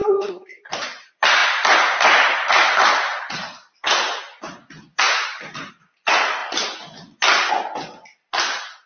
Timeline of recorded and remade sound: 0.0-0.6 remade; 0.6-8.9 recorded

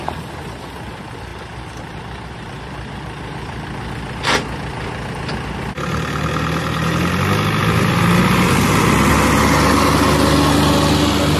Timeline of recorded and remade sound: 0.0-1.3 recorded; 1.3-5.4 remade; 5.4-7.6 recorded; 7.6-9.1 remade; 9.1-11.4 recorded

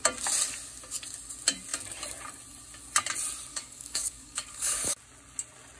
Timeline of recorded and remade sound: 0.0-3.5 recorded; 3.5-5.0 remade; 5.0-5.8 recorded

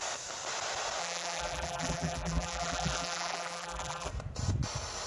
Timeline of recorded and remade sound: 0.0-1.0 recorded; 1.0-4.1 remade; 4.1-5.1 recorded

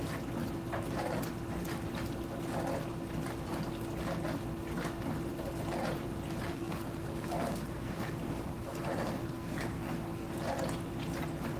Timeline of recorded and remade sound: 0.0-6.5 recorded; 6.5-10.3 remade; 10.3-11.6 recorded

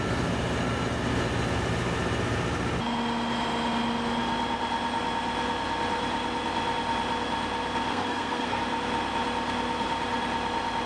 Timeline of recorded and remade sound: 0.0-7.9 recorded; 7.9-8.6 remade; 8.6-10.9 recorded